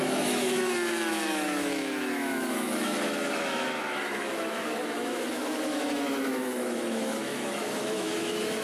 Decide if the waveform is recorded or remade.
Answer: remade